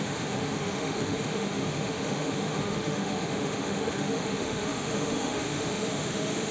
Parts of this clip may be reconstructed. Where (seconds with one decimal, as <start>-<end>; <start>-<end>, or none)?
0.0-6.5